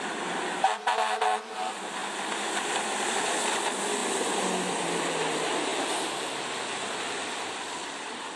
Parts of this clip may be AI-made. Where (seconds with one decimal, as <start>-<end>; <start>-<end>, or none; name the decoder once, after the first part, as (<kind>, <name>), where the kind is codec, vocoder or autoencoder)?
0.0-8.4 (vocoder, BigVGAN v2)